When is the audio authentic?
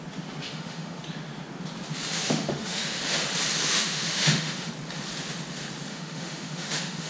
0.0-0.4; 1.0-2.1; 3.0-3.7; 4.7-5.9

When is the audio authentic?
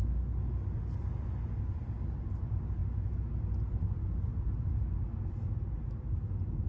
0.6-6.7